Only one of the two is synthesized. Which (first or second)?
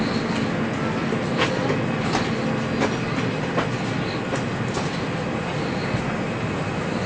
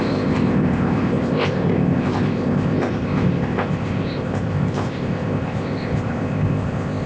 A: second